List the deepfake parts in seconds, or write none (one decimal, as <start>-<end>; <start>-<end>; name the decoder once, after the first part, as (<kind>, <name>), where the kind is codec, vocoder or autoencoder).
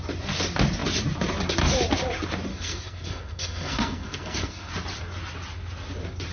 2.5-4.7 (codec, SNAC)